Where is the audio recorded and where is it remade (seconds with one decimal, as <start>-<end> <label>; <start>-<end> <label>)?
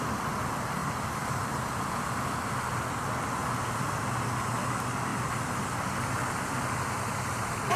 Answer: 0.0-7.8 recorded